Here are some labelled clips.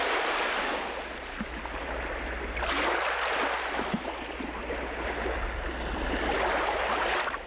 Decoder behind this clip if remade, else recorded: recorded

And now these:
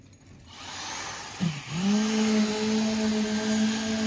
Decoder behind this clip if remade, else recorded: recorded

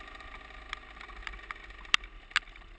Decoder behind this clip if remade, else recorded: recorded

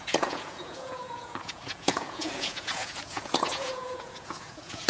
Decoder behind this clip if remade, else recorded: remade, vocoder, Vocos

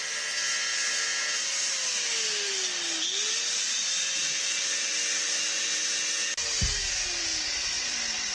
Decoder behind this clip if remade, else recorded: recorded